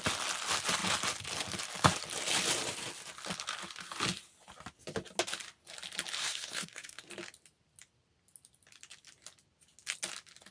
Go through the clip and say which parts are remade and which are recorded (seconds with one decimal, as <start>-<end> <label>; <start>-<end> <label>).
0.0-6.2 recorded; 6.2-7.1 remade; 7.1-10.5 recorded